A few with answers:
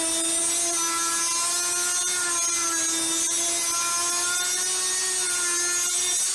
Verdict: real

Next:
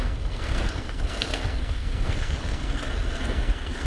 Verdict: fake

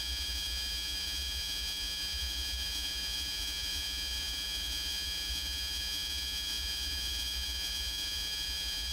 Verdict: fake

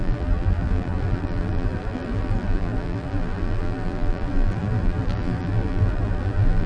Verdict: fake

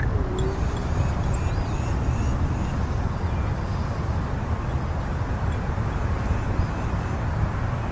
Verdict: real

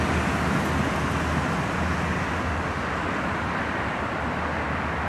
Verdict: real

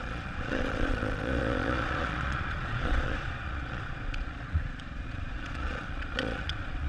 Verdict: fake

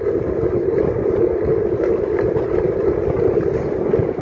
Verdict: real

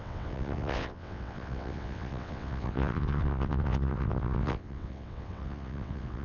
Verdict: fake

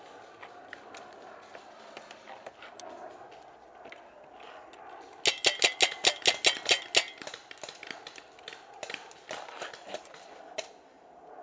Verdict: real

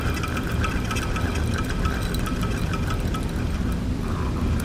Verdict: real